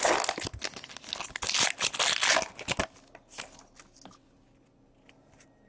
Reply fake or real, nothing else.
real